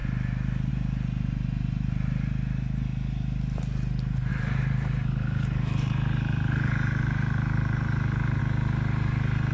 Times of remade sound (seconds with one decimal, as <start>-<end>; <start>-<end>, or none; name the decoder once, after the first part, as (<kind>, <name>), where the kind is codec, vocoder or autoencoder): 4.3-8.4 (vocoder, BigVGAN v2)